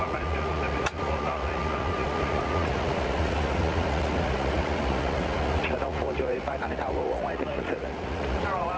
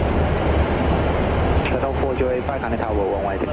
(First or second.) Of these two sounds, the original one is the second